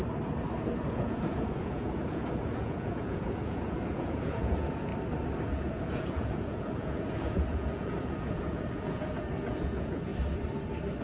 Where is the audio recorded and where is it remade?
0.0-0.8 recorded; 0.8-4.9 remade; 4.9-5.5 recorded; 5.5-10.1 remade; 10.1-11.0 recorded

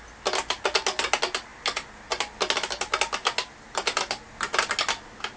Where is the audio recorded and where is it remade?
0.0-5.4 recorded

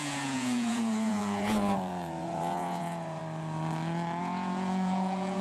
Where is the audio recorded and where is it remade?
0.0-3.2 remade; 3.2-4.2 recorded; 4.2-5.4 remade